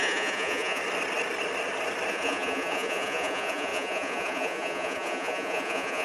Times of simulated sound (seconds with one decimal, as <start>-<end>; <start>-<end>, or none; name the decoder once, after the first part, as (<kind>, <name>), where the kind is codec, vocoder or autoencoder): 0.0-0.8 (vocoder, Vocos); 2.1-6.0

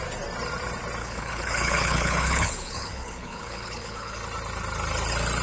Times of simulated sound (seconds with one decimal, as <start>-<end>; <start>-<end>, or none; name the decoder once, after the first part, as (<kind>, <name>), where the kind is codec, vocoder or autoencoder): 1.0-4.2 (codec, HILCodec)

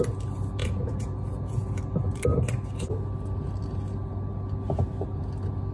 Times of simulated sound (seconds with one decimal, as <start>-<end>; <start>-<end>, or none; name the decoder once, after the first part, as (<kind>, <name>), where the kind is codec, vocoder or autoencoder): 0.6-1.7 (vocoder, Vocos)

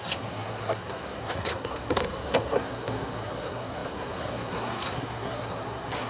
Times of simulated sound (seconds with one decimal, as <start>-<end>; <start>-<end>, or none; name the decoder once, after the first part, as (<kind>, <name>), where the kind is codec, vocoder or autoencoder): 0.0-6.1 (codec, SNAC)

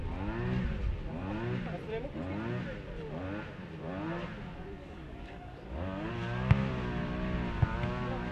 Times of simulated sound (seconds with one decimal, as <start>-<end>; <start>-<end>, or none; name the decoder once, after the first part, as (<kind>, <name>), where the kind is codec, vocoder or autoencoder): 4.8-6.1 (codec, DAC)